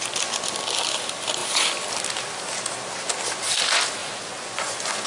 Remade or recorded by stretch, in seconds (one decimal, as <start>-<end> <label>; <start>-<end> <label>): 0.0-4.0 recorded; 4.0-5.1 remade